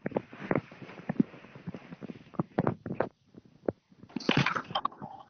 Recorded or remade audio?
remade